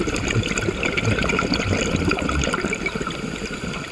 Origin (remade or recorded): recorded